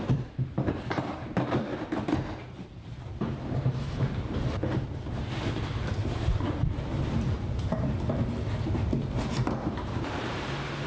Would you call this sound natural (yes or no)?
no